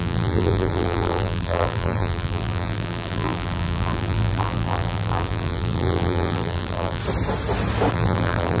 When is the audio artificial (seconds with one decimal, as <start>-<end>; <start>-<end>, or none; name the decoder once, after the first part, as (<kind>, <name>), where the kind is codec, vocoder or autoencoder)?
0.0-7.0 (vocoder, BigVGAN v2); 7.9-8.6